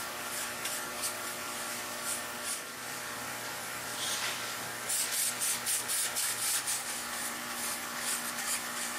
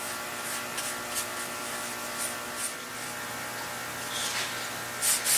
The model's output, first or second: first